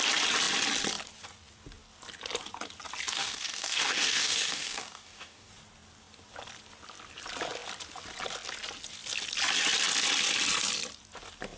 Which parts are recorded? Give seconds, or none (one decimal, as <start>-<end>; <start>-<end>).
0.0-3.1; 5.5-11.6